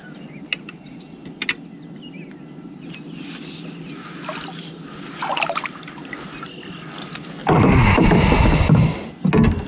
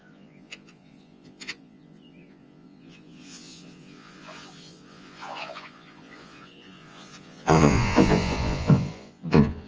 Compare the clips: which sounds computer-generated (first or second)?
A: second